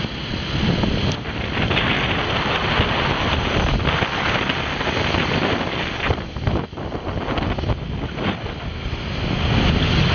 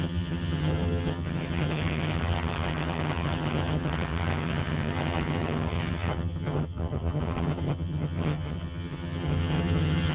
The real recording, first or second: first